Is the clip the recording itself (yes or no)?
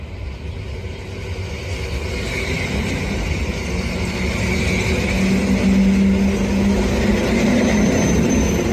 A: yes